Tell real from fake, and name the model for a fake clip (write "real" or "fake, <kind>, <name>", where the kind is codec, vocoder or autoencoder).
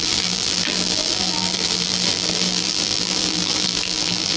fake, vocoder, BigVGAN v2